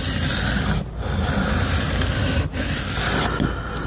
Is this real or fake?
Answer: real